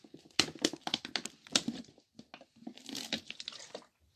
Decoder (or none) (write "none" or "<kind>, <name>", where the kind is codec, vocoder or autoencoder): none